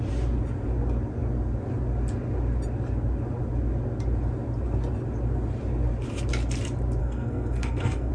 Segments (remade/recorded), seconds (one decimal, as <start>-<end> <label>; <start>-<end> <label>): 0.0-7.0 recorded; 7.0-8.1 remade